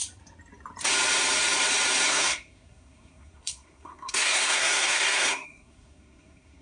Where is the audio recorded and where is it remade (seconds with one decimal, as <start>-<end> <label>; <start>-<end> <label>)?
0.0-2.1 recorded; 2.1-6.6 remade